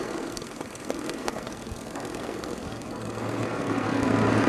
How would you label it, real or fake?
fake